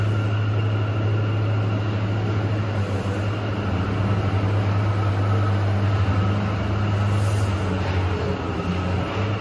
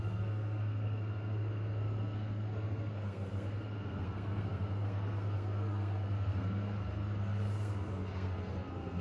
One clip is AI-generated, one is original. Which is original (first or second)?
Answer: first